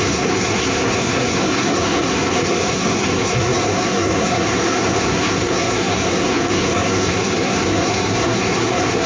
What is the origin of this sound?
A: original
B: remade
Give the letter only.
B